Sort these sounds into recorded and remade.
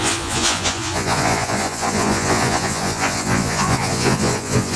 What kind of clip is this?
remade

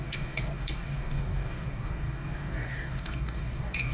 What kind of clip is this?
remade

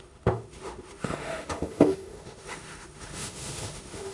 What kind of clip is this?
remade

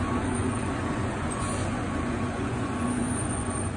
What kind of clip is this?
remade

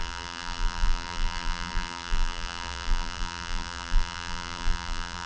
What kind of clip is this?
remade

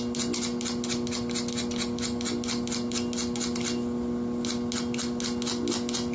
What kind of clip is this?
recorded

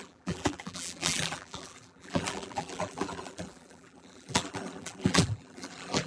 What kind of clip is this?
remade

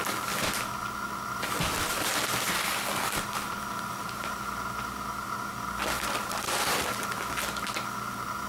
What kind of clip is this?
recorded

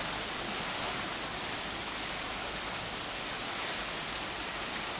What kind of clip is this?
recorded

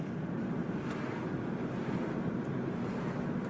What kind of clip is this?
recorded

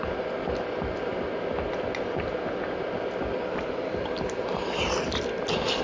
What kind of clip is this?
recorded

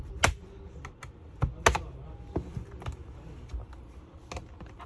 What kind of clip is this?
recorded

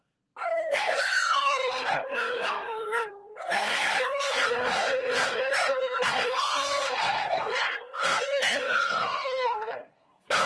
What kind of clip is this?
remade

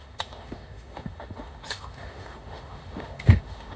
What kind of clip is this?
remade